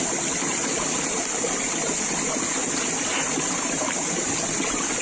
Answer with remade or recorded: recorded